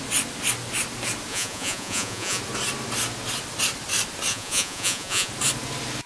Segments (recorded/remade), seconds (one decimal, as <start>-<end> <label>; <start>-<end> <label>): 0.0-1.3 recorded; 1.3-2.4 remade; 2.4-4.3 recorded; 4.3-5.3 remade; 5.3-6.1 recorded